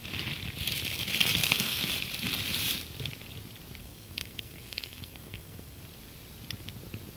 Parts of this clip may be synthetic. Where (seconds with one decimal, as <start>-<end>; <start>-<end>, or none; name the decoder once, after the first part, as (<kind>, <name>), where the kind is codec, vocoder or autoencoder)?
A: 1.4-1.9 (codec, SNAC); 3.8-5.8